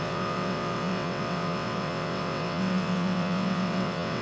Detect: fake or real fake